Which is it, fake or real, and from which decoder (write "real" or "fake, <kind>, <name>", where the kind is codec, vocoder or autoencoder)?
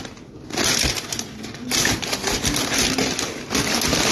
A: real